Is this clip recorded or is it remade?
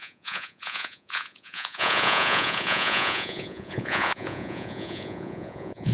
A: remade